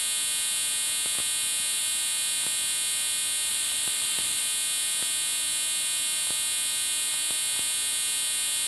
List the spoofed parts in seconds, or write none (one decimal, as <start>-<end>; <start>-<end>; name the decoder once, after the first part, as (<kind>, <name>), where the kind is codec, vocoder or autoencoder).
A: 3.5-4.4 (vocoder, BigVGAN v2)